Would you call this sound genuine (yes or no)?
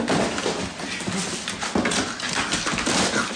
yes